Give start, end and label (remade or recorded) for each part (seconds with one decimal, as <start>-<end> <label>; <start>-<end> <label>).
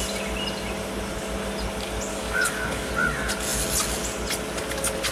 0.0-2.1 recorded; 2.1-2.9 remade; 2.9-5.1 recorded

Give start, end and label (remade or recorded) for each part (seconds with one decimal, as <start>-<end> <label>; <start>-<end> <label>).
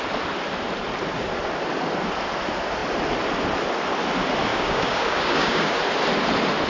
0.0-4.5 recorded; 4.5-5.8 remade; 5.8-6.7 recorded